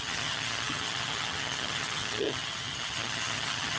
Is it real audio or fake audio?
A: fake